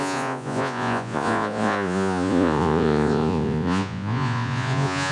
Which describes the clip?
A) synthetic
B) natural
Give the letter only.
A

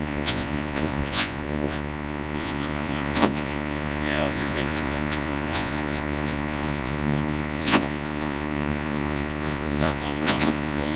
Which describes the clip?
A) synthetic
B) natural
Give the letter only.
A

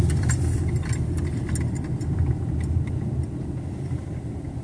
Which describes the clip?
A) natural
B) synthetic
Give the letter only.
A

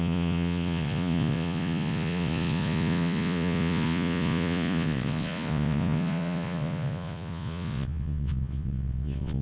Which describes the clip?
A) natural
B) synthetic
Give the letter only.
B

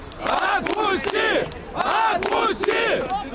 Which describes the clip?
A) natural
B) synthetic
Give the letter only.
A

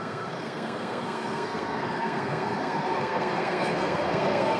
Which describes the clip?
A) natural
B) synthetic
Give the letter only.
B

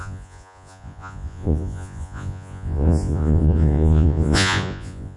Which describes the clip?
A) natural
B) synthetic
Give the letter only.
B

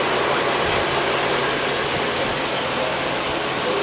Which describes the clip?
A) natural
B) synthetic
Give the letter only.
A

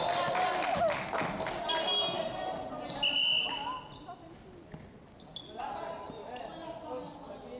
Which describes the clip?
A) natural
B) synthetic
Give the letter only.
A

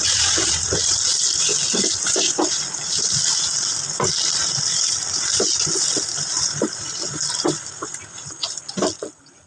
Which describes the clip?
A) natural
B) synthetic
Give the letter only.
A